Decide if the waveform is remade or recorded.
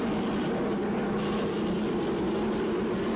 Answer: recorded